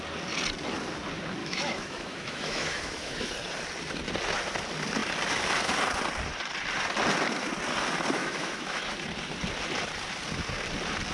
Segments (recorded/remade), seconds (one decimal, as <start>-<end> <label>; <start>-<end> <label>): 0.0-1.4 recorded; 1.4-3.3 remade; 3.3-8.2 recorded; 8.2-8.9 remade; 8.9-11.1 recorded